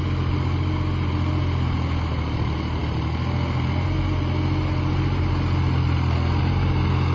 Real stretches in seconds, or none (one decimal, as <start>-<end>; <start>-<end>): 0.0-7.1